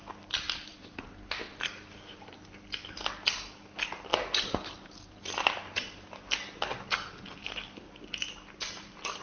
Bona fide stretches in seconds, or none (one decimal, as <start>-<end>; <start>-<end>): 0.0-4.1; 6.8-9.2